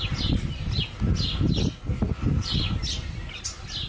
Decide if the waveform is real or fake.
real